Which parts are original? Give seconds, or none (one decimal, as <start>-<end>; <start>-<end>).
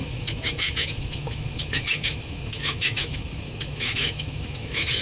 none